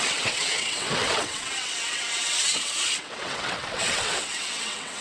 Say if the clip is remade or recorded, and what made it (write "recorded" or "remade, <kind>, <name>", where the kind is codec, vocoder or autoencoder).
remade, vocoder, WaveNeXt